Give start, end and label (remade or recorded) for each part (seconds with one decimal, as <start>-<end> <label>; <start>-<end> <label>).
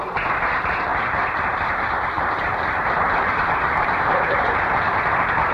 0.0-0.9 recorded; 0.9-4.2 remade; 4.2-5.5 recorded